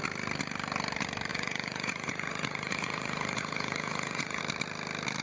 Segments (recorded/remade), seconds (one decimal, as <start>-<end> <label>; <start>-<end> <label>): 0.0-1.3 recorded; 1.3-4.4 remade; 4.4-5.2 recorded